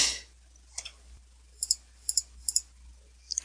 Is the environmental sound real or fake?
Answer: real